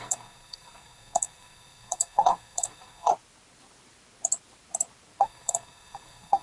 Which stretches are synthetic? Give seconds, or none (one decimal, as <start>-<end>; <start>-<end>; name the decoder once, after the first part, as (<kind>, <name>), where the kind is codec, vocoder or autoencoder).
0.0-3.1 (codec, SNAC); 5.2-6.4